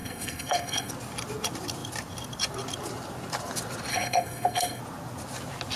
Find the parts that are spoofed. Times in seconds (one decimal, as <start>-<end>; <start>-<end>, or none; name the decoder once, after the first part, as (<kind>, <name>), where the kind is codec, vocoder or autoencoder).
0.0-0.9 (codec, SNAC); 3.9-4.8